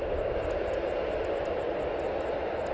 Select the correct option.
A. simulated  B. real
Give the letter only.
B